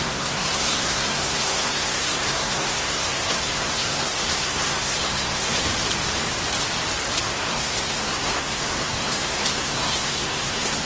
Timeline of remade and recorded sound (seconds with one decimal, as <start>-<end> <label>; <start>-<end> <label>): 0.0-5.7 remade; 5.7-7.2 recorded; 7.2-10.9 remade